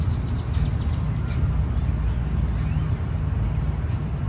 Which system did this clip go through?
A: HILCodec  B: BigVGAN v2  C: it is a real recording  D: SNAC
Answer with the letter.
C